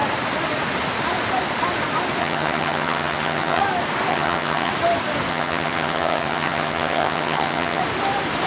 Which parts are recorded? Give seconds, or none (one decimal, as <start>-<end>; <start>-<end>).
0.0-2.2; 3.6-4.1; 4.7-5.3; 7.8-8.5

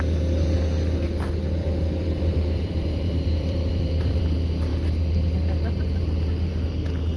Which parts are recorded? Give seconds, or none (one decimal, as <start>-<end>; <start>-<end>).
0.0-1.6; 4.2-7.2

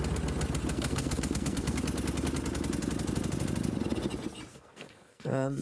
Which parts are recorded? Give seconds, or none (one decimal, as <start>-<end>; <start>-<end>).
0.0-0.7; 1.8-4.5

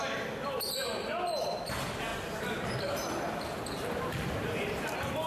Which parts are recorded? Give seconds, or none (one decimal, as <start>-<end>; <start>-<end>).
0.0-5.3

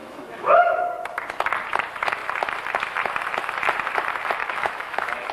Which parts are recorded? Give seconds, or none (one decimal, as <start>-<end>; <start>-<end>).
0.8-4.4

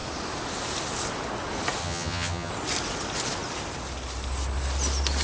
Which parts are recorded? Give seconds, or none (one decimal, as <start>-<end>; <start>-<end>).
0.0-1.8; 2.5-5.2

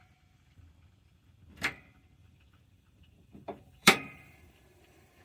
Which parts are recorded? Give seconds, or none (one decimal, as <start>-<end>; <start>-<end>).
0.0-2.2